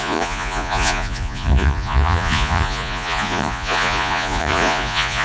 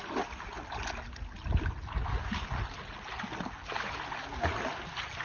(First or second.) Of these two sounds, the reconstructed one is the first